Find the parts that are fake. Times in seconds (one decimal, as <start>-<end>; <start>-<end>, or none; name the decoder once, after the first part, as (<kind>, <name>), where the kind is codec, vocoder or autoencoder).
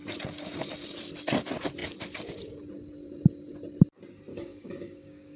4.3-5.4 (codec, DAC)